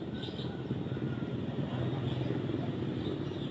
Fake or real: real